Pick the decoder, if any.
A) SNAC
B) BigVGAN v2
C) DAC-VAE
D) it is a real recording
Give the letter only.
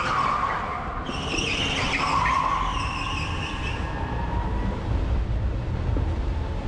D